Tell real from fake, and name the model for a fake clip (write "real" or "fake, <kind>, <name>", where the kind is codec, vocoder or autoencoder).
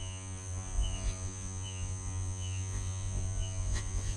fake, vocoder, Vocos